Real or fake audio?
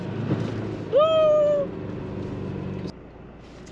real